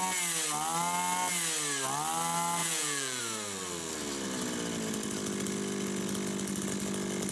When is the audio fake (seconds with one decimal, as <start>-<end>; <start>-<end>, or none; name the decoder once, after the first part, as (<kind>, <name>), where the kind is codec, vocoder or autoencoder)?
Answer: 2.6-3.2 (vocoder, Vocos)